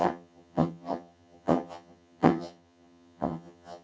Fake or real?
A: fake